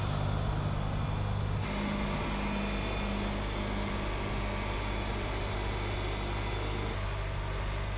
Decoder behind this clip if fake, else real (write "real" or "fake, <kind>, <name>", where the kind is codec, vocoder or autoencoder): real